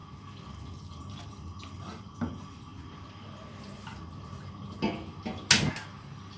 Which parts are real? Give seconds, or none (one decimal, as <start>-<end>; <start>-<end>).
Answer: 0.0-0.9; 2.7-6.0